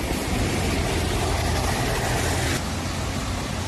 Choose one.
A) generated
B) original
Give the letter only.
B